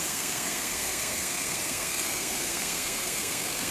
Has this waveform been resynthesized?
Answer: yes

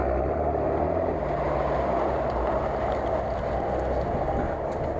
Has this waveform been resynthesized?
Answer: no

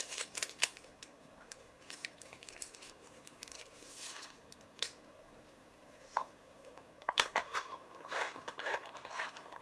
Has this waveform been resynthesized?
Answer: yes